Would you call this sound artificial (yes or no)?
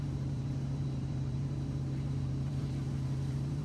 yes